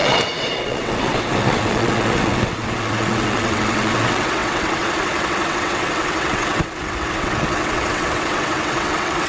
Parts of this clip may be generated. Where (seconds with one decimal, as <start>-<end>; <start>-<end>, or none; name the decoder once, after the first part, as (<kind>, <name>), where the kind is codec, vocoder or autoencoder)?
0.0-9.3 (vocoder, WaveNeXt)